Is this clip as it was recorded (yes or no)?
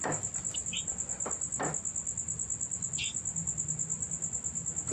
yes